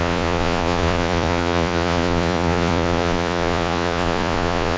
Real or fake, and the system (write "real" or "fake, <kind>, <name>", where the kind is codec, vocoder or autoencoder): fake, vocoder, Vocos